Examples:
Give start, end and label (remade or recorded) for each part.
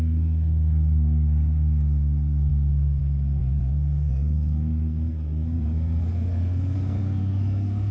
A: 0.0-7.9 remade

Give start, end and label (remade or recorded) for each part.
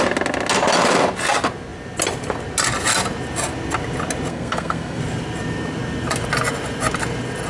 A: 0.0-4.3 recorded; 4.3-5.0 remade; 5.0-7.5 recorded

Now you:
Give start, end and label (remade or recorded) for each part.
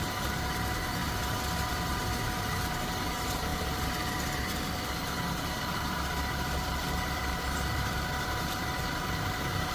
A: 0.0-1.0 remade; 1.0-1.7 recorded; 1.7-9.7 remade